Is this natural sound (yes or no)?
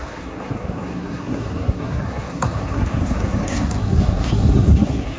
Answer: no